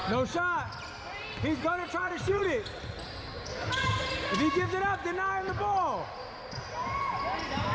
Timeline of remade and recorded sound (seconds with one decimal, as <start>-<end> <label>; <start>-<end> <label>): 0.0-1.6 recorded; 1.6-2.4 remade; 2.4-7.7 recorded